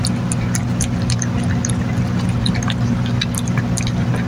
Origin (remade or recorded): recorded